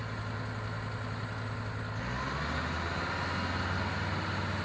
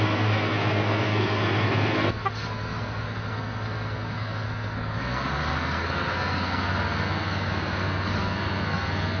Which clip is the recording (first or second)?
first